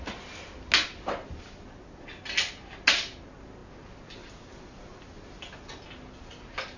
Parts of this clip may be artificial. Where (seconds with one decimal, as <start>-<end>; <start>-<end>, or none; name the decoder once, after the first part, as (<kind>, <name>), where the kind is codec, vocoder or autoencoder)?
none